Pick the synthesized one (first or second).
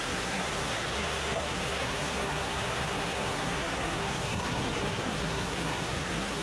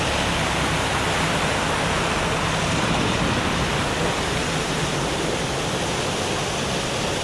first